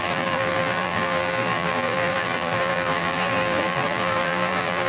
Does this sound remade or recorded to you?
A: remade